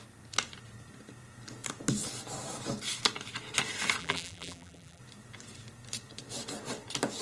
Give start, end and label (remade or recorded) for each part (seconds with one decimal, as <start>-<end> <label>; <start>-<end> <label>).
0.0-4.0 recorded; 4.0-5.0 remade; 5.0-7.2 recorded

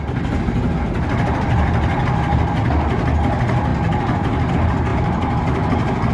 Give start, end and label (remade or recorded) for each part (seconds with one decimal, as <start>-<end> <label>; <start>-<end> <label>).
0.0-6.1 recorded

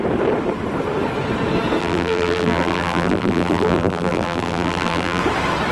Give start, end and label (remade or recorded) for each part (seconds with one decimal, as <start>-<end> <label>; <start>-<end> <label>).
0.0-1.8 recorded; 1.8-5.2 remade; 5.2-5.7 recorded

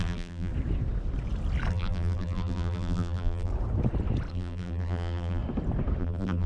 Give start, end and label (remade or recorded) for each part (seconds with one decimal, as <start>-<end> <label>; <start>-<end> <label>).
0.0-0.5 remade; 0.5-1.7 recorded; 1.7-3.5 remade; 3.5-4.3 recorded; 4.3-5.4 remade; 5.4-6.0 recorded; 6.0-6.5 remade

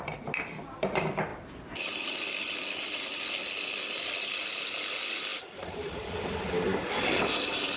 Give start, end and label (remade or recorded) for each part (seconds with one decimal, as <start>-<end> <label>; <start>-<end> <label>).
0.0-5.3 recorded; 5.3-7.3 remade; 7.3-7.8 recorded